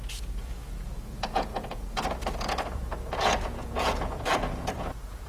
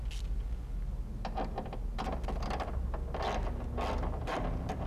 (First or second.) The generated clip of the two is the first